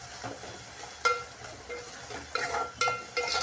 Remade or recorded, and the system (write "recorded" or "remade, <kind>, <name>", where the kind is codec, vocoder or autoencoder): recorded